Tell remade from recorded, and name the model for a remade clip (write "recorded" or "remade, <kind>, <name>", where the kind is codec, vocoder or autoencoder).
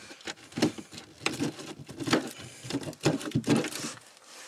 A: recorded